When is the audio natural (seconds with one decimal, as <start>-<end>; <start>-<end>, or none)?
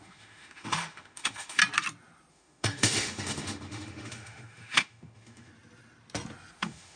1.6-2.3; 5.5-6.6